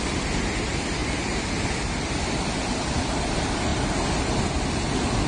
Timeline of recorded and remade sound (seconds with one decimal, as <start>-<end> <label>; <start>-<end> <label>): 0.0-5.3 recorded